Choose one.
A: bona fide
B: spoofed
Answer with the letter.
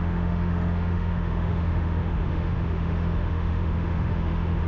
B